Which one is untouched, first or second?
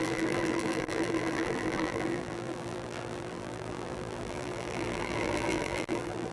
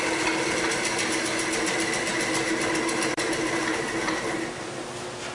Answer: second